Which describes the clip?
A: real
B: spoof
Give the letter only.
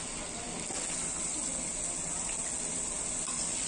A